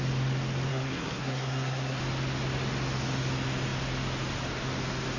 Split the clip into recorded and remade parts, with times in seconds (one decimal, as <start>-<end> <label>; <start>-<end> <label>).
0.0-0.7 recorded; 0.7-2.0 remade; 2.0-5.2 recorded